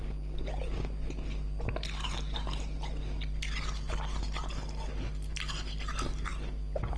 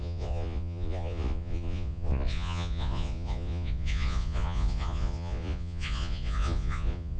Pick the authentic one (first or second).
first